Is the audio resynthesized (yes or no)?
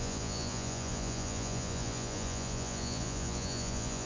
yes